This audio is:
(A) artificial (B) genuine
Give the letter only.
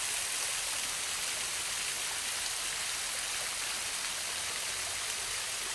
B